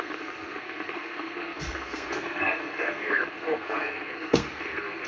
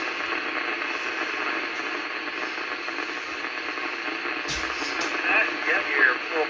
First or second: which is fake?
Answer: first